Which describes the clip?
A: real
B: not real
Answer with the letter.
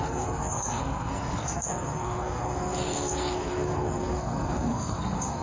B